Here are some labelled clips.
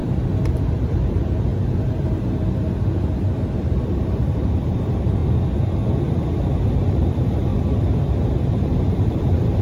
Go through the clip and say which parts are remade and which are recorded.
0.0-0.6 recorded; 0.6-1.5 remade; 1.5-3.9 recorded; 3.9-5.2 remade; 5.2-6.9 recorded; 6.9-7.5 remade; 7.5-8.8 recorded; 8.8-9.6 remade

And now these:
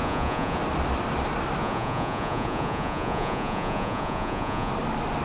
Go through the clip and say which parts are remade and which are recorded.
0.0-0.6 remade; 0.6-1.6 recorded; 1.6-4.7 remade; 4.7-5.2 recorded

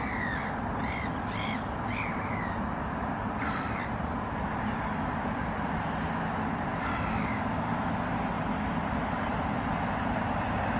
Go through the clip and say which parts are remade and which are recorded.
0.0-10.8 recorded

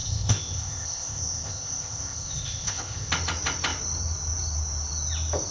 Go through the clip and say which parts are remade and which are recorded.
0.0-3.1 remade; 3.1-5.5 recorded